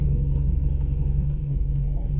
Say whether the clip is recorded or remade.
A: remade